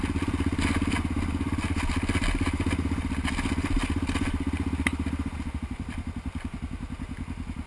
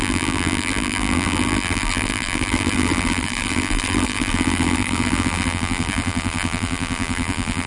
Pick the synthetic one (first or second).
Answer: second